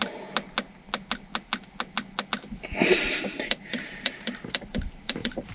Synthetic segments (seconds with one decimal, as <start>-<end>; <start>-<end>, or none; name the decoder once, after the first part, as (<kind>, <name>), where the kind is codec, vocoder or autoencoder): 2.9-5.5 (vocoder, BigVGAN v2)